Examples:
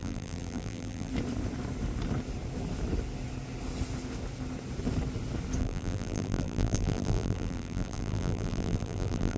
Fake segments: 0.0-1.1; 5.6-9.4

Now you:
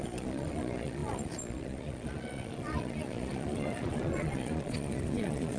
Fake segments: 0.0-5.6